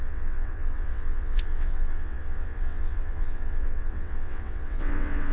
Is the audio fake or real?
fake